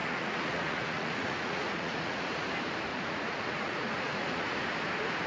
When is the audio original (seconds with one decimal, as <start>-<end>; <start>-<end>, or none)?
2.5-2.9; 4.6-5.3